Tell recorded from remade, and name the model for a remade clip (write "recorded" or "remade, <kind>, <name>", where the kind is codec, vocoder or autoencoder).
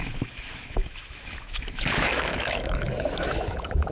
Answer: remade, autoencoder, DAC-VAE